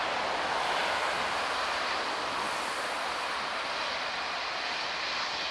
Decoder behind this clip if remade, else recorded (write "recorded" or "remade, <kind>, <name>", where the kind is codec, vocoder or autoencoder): recorded